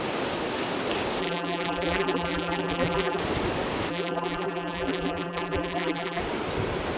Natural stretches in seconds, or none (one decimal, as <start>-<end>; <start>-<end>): 0.0-1.2; 3.2-3.9; 6.2-7.0